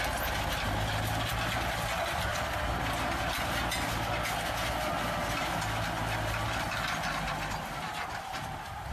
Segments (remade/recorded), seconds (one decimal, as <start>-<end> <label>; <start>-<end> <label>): 0.0-8.9 recorded